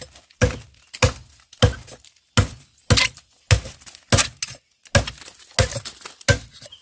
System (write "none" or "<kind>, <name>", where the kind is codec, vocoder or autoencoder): none